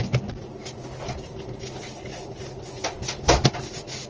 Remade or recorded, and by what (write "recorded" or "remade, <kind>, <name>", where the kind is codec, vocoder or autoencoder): recorded